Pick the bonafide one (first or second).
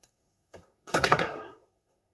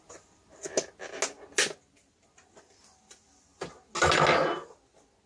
second